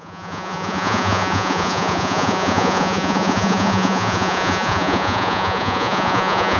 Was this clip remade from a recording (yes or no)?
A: yes